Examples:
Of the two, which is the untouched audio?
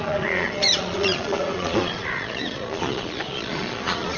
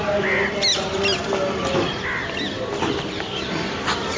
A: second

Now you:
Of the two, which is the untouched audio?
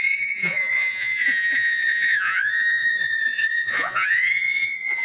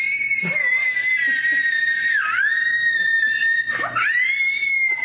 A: second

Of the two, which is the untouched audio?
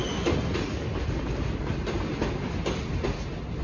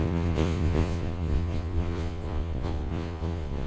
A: first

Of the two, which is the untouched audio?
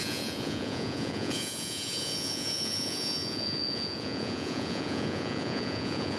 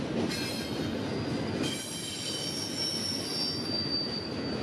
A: second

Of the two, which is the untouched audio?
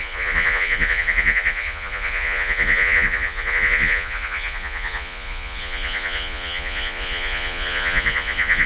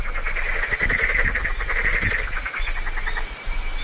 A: second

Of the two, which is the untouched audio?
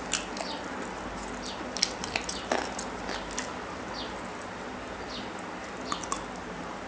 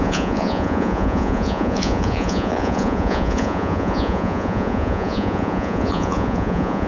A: first